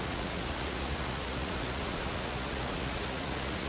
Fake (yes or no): yes